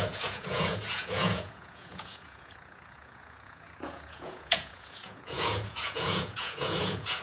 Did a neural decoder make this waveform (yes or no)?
yes